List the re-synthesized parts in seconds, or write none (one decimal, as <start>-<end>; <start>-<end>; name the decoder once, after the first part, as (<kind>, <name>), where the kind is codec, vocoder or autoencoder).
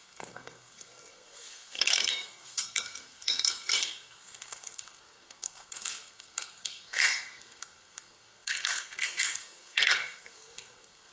0.0-11.1 (codec, SNAC)